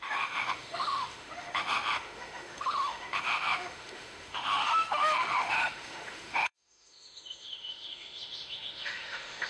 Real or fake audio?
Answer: fake